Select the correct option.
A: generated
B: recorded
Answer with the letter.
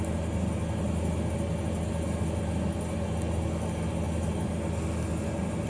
B